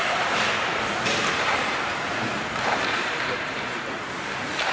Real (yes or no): no